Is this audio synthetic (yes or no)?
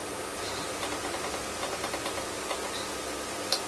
no